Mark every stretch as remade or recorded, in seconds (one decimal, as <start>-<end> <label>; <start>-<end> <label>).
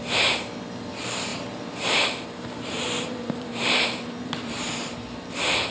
0.0-1.3 recorded; 1.3-4.6 remade; 4.6-5.7 recorded